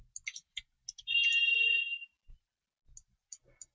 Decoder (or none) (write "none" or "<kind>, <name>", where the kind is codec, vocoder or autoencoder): none